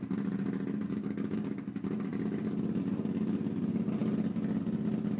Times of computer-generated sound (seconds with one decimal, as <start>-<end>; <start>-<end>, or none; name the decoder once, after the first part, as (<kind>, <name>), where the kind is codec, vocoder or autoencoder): 0.8-1.6 (codec, DAC)